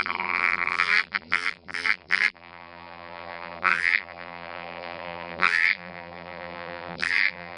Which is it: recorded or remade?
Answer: remade